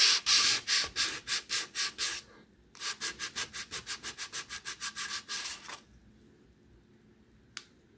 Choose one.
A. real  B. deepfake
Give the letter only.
A